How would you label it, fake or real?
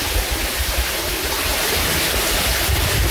real